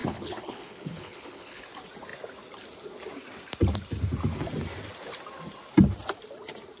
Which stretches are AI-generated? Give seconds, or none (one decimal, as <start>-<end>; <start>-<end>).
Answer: 0.0-1.6